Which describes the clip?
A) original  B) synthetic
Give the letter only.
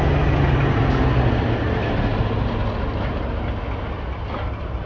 A